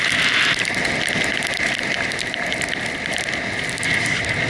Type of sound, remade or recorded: recorded